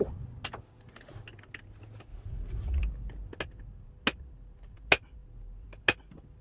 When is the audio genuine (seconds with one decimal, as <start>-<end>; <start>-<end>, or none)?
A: 0.0-2.1; 2.8-6.4